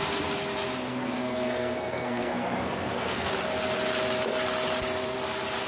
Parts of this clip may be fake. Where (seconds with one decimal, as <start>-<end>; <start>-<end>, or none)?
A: 0.9-3.3